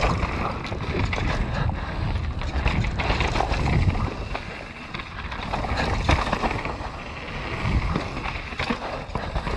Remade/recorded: recorded